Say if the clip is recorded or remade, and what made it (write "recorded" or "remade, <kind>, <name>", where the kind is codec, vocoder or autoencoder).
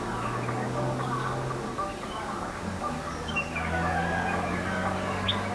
remade, codec, DAC